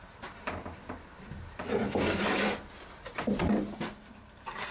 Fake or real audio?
real